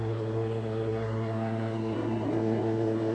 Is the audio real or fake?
fake